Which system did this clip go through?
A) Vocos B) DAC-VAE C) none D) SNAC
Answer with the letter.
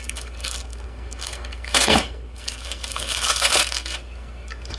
D